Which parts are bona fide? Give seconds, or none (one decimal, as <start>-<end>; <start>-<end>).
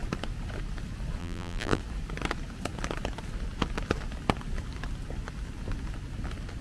0.0-1.2; 1.8-6.6